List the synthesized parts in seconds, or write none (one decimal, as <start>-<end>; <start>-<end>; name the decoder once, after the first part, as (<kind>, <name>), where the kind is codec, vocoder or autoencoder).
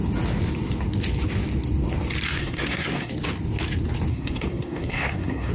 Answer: 2.3-3.1 (codec, SNAC); 4.1-5.5